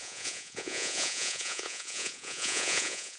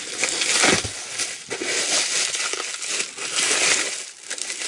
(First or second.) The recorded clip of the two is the second